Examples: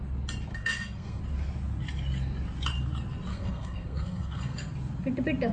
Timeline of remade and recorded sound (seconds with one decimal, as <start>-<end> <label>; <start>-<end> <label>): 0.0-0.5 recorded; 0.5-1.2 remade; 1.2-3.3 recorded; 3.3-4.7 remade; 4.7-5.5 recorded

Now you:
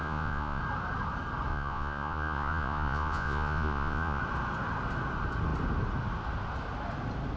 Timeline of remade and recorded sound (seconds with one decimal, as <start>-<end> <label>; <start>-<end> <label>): 0.0-0.6 remade; 0.6-1.5 recorded; 1.5-4.2 remade; 4.2-7.4 recorded

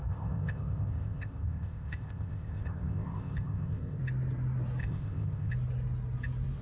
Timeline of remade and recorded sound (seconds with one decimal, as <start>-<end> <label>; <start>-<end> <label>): 0.0-4.0 remade; 4.0-4.8 recorded; 4.8-5.5 remade; 5.5-6.6 recorded